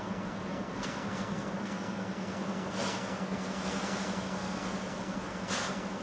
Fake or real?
fake